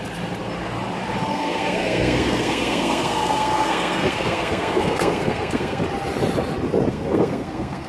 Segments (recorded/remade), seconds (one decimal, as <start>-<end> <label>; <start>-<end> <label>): 0.0-1.3 recorded; 1.3-5.8 remade; 5.8-6.9 recorded; 6.9-7.9 remade